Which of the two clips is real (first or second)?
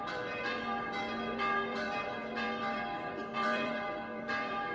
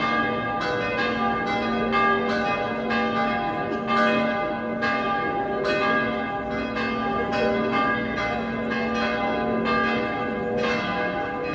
second